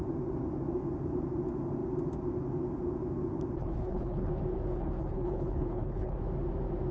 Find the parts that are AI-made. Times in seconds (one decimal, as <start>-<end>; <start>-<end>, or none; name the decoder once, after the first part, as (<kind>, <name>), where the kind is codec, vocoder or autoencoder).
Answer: 3.6-4.3 (codec, HILCodec); 4.7-6.2

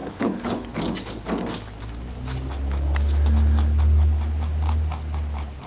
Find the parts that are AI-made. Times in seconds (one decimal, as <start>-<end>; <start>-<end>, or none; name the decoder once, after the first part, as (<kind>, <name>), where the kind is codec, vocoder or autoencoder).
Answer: 0.0-0.7 (codec, HILCodec)

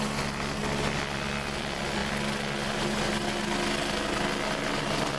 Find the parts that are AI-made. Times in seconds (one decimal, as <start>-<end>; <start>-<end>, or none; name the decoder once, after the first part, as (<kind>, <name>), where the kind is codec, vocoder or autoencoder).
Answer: none

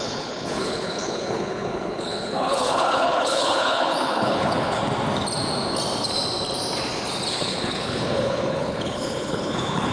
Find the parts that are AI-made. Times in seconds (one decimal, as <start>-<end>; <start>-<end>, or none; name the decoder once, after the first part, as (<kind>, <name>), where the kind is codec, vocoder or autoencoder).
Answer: 0.0-4.8 (codec, HILCodec); 7.3-9.9

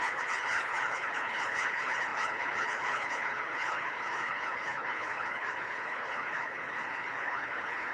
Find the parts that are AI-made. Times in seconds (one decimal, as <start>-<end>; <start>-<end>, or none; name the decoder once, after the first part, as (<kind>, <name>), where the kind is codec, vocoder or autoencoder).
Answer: 0.0-7.9 (codec, HILCodec)

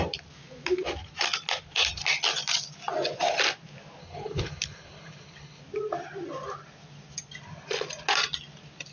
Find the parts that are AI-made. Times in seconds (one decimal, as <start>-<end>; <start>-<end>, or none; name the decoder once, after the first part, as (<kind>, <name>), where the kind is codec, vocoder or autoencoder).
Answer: 4.0-5.6 (codec, HILCodec)